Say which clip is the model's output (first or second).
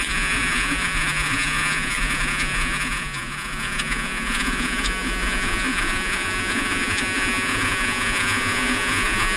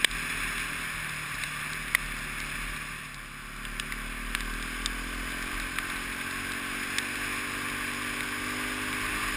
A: first